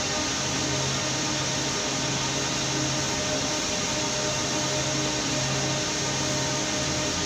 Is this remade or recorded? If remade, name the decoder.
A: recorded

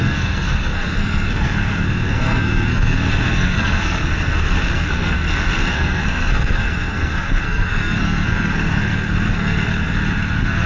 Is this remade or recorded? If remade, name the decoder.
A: remade, codec, SNAC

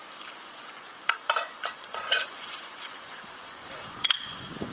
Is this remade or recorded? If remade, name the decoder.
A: remade, vocoder, Vocos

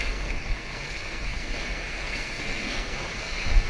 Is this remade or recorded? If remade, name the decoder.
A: remade, codec, SNAC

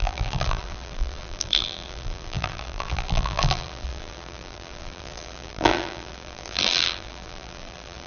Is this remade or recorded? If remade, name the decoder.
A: remade, vocoder, BigVGAN v2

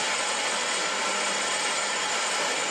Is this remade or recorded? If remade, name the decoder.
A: recorded